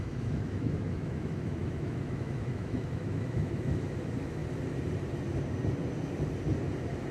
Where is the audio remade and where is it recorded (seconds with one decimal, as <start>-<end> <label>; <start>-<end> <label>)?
0.0-4.4 remade; 4.4-7.1 recorded